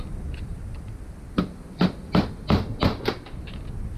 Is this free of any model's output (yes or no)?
yes